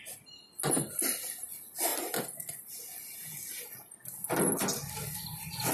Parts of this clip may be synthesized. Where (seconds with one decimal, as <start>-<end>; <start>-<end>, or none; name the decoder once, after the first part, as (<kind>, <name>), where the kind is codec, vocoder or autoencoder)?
1.9-2.8 (vocoder, BigVGAN v2)